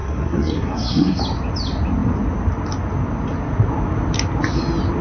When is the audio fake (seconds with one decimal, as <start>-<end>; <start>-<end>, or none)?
0.0-1.2

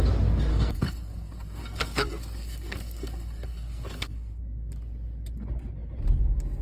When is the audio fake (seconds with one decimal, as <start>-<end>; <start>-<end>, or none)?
0.5-4.4

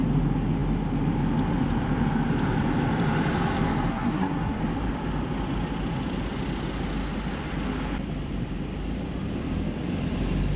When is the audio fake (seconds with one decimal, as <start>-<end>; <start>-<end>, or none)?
3.9-4.6

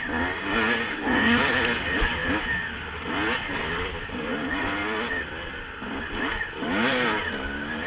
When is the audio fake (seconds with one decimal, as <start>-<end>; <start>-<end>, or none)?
0.9-1.4

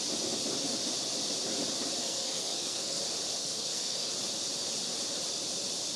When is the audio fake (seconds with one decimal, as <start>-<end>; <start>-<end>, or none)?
2.0-3.0; 3.4-4.1

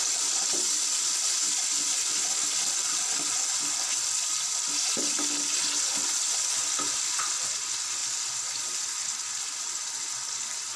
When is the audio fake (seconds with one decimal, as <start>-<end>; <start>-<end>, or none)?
none

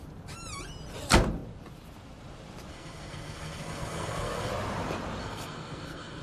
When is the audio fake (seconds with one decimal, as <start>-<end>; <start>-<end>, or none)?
2.7-4.5; 5.2-6.2